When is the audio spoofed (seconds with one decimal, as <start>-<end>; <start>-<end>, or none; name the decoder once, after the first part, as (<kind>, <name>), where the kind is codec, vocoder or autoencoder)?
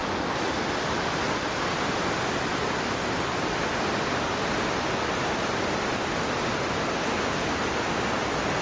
none